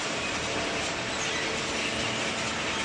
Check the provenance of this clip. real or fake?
real